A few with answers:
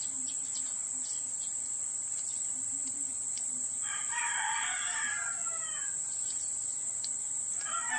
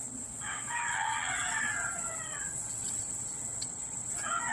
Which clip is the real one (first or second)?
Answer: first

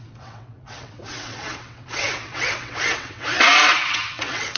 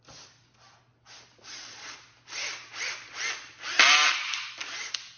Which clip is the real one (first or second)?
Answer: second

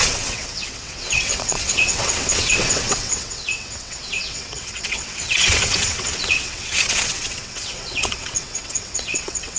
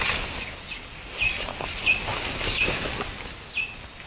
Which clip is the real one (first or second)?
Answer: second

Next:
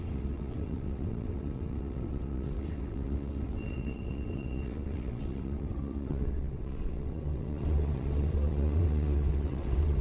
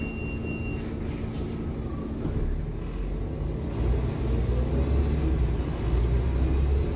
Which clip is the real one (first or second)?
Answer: second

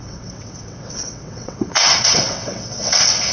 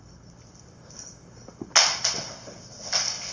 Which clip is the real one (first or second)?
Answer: second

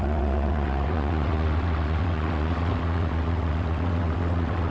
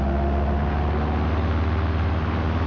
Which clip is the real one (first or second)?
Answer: second